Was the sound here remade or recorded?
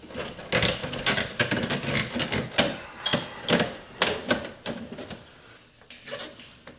recorded